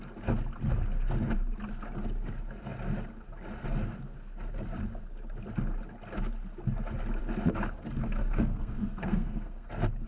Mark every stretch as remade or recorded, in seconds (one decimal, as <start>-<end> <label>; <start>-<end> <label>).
0.0-8.2 recorded; 8.2-9.7 remade; 9.7-10.1 recorded